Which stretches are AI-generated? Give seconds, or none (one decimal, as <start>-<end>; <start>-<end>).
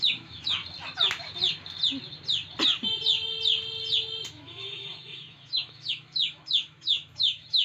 0.0-0.6; 4.3-7.6